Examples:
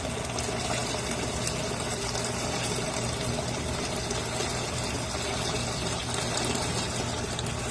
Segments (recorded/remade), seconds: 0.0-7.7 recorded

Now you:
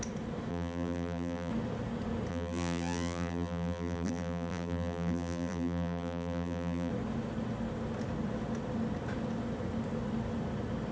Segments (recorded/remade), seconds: 0.0-0.5 recorded; 0.5-1.5 remade; 1.5-2.3 recorded; 2.3-6.9 remade; 6.9-10.9 recorded

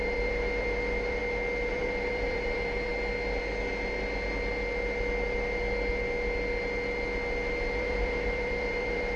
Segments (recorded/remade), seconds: 0.0-1.2 remade; 1.2-1.7 recorded; 1.7-2.9 remade; 2.9-7.8 recorded; 7.8-9.2 remade